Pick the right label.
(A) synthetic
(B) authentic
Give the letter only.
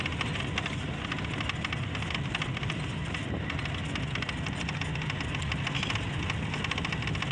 B